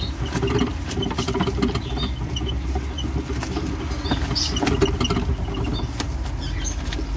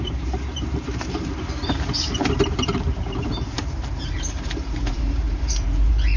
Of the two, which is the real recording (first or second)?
first